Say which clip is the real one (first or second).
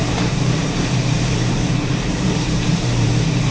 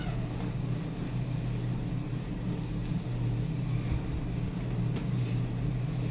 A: second